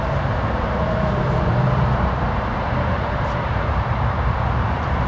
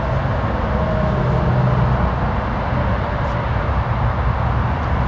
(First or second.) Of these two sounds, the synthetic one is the first